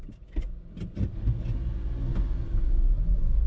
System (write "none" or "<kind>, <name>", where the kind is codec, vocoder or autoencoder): none